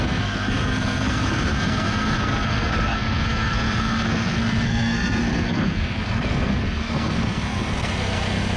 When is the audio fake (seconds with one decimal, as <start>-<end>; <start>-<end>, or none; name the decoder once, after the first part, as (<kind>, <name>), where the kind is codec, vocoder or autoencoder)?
0.0-8.6 (codec, SNAC)